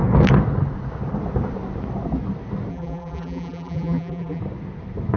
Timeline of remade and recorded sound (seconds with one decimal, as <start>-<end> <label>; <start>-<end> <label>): 0.0-2.7 recorded; 2.7-4.4 remade; 4.4-5.2 recorded